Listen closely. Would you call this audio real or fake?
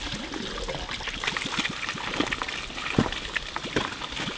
real